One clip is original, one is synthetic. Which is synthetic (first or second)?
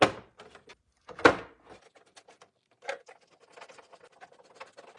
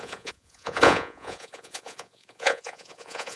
second